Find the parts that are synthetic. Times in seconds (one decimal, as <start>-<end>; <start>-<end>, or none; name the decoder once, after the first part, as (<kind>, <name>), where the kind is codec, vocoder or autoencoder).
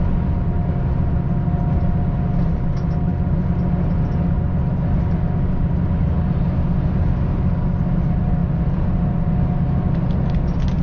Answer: none